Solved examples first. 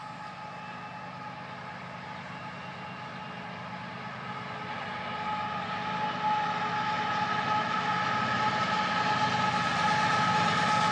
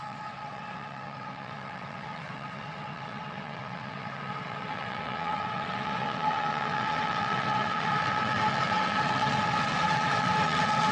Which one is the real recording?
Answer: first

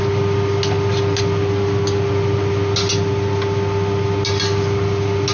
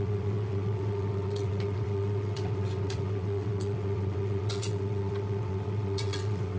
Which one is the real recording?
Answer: first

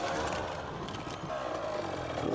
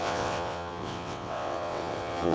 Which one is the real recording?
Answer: first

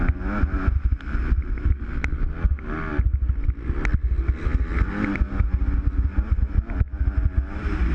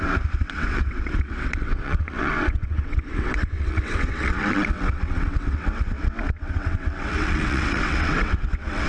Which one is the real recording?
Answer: first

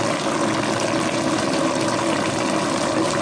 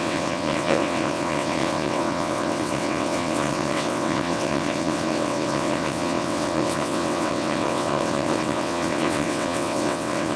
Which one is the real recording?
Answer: first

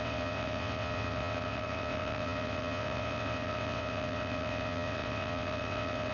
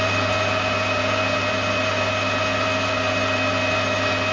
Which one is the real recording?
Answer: second